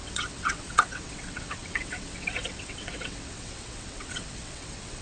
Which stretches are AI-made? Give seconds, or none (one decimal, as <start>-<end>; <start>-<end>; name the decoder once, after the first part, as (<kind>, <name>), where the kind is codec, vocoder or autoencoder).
0.0-5.0 (vocoder, WaveNeXt)